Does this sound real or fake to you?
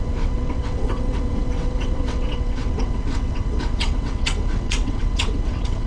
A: fake